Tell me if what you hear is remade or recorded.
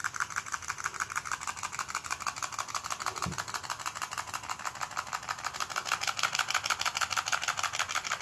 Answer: recorded